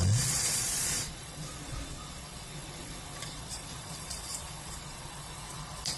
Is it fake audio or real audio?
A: fake